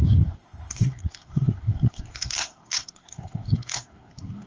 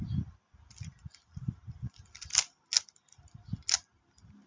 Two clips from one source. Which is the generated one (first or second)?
first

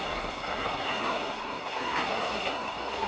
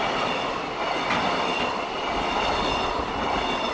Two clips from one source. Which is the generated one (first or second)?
first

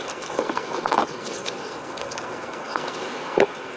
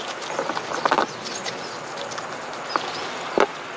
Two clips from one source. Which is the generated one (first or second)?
first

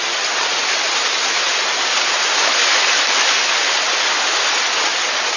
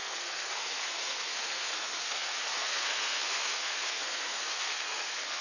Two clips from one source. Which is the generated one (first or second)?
second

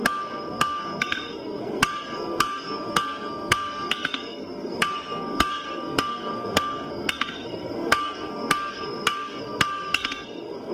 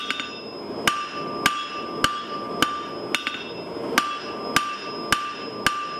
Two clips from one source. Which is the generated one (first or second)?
first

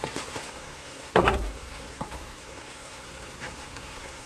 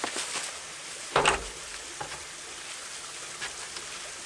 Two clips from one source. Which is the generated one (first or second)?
first